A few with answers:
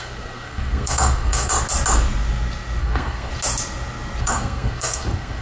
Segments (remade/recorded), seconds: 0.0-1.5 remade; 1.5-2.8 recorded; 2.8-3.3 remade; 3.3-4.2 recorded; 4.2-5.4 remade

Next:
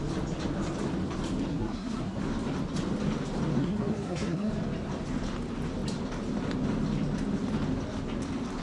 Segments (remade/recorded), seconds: 0.0-1.5 recorded; 1.5-2.2 remade; 2.2-3.6 recorded; 3.6-4.5 remade; 4.5-8.6 recorded

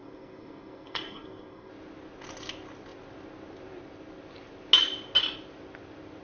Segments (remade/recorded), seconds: 0.0-1.7 remade; 1.7-6.2 recorded

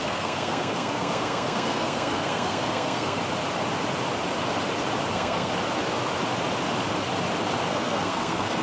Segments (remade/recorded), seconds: 0.0-3.2 remade; 3.2-5.1 recorded; 5.1-5.5 remade; 5.5-7.7 recorded; 7.7-8.6 remade

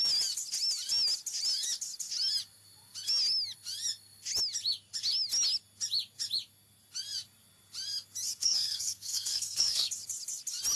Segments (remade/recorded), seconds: 0.0-8.4 recorded; 8.4-9.9 remade; 9.9-10.8 recorded